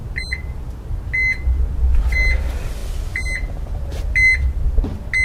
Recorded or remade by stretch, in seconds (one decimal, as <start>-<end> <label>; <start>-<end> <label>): 0.0-5.2 recorded